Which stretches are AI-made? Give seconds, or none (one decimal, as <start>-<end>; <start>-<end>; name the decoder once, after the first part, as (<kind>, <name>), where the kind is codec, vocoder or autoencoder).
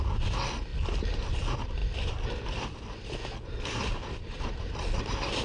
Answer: none